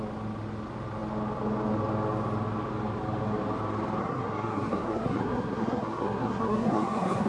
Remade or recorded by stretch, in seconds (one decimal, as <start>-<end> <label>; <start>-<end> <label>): 0.0-4.0 recorded; 4.0-7.3 remade